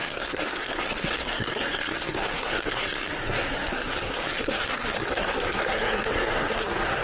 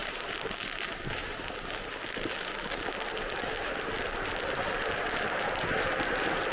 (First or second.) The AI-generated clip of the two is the first